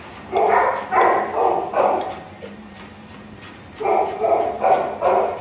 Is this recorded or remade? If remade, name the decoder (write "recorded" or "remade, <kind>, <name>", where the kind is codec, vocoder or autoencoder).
recorded